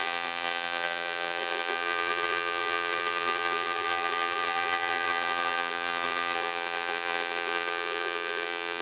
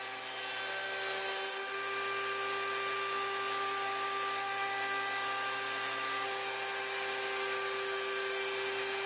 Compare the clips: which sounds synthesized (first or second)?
first